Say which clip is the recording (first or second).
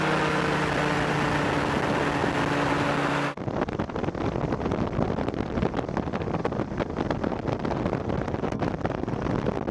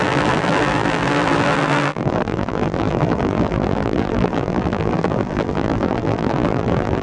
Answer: first